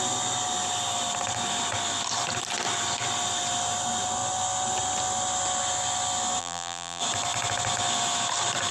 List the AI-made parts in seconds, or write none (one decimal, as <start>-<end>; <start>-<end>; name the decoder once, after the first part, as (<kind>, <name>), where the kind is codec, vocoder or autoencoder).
6.4-7.0 (vocoder, BigVGAN v2)